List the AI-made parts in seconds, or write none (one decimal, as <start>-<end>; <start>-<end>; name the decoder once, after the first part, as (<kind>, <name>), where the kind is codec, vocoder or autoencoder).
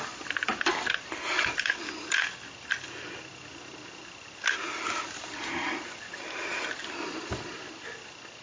none